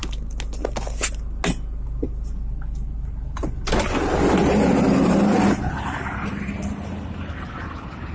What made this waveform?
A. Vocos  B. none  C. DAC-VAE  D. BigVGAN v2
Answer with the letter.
B